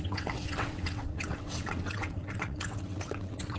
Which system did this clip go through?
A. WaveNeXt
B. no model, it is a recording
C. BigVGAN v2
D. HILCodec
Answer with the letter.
A